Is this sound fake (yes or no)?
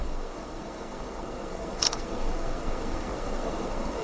yes